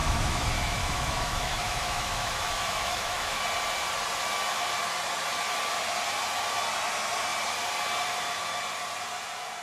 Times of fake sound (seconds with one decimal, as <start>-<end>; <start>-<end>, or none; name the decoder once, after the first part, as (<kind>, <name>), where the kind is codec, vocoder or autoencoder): 0.0-3.4 (autoencoder, DAC-VAE)